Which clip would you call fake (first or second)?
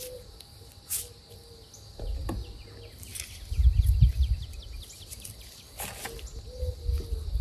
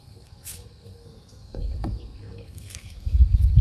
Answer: second